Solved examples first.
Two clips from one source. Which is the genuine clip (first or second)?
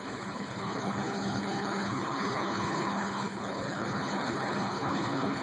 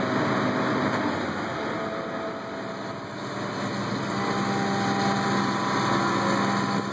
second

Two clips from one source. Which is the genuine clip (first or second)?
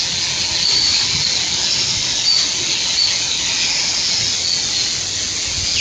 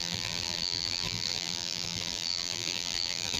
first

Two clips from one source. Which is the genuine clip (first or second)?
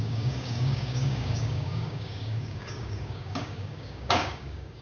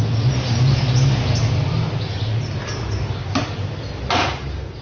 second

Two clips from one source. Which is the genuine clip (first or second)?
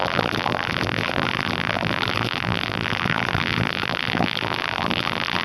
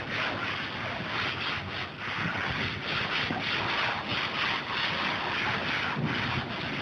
second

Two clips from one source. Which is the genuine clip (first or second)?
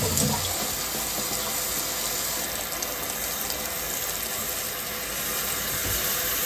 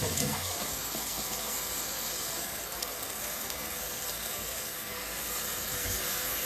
first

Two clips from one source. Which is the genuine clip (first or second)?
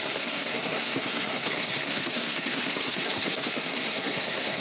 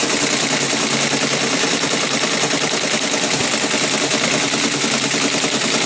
second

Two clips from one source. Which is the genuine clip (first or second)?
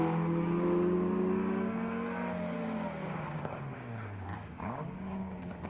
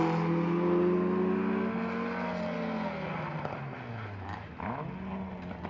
second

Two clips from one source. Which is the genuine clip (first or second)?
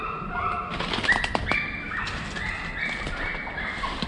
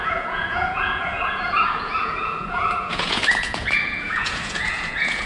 first